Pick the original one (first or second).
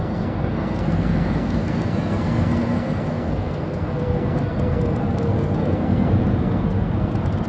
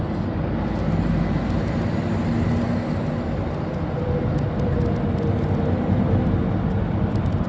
second